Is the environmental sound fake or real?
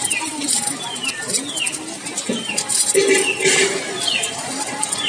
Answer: real